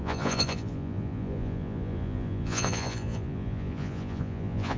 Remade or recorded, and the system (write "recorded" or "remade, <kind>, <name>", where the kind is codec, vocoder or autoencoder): remade, vocoder, Vocos